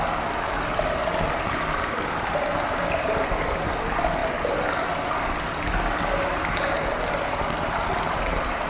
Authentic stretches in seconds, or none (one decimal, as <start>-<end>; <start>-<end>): 0.0-8.7